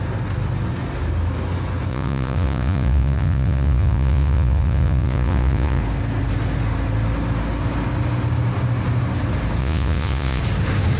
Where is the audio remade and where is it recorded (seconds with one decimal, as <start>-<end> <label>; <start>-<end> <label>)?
0.0-1.9 recorded; 1.9-5.8 remade; 5.8-9.6 recorded; 9.6-10.4 remade; 10.4-11.0 recorded